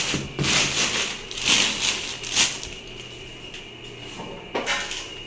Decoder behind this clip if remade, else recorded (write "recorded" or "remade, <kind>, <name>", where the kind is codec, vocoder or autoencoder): recorded